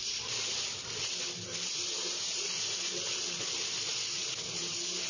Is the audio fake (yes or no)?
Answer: no